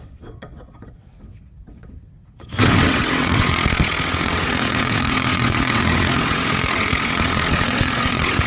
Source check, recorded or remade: remade